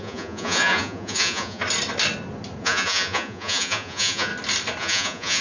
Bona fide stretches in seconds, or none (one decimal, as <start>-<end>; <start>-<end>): 1.6-2.6; 4.3-4.8